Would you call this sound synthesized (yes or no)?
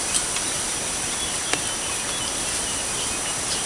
no